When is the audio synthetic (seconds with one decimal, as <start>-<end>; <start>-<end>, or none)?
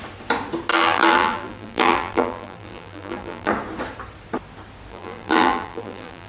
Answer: 0.7-3.5; 4.9-6.3